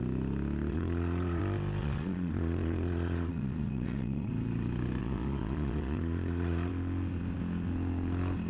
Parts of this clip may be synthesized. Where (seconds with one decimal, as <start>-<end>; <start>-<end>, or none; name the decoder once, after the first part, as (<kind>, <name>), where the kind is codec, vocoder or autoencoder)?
0.7-1.4 (vocoder, Vocos); 1.8-4.3; 5.0-6.7